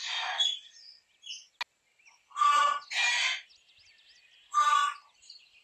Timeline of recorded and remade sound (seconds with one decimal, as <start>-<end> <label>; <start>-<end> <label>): 0.0-5.6 recorded